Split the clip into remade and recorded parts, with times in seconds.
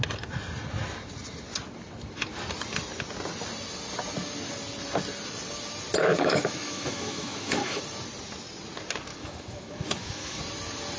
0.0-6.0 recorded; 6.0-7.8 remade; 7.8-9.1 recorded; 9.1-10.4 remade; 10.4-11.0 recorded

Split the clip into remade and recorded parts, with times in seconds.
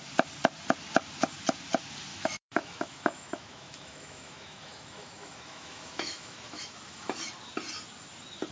0.0-2.1 recorded; 2.1-7.2 remade; 7.2-8.5 recorded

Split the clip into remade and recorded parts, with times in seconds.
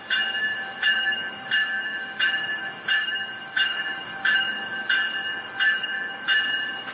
0.0-0.5 recorded; 0.5-4.6 remade; 4.6-5.3 recorded; 5.3-6.4 remade; 6.4-6.9 recorded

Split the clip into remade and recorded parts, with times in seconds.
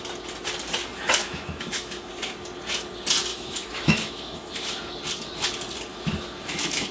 0.0-1.2 recorded; 1.2-2.1 remade; 2.1-3.3 recorded; 3.3-4.9 remade; 4.9-5.9 recorded; 5.9-6.9 remade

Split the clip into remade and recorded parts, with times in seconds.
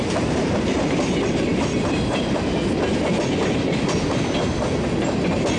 0.0-5.6 recorded